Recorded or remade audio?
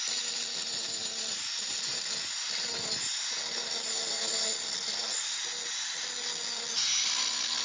recorded